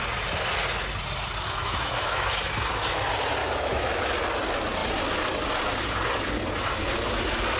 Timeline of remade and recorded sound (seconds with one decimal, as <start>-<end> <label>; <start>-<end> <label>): 0.0-1.6 recorded; 1.6-2.3 remade; 2.3-3.4 recorded; 3.4-4.0 remade; 4.0-7.6 recorded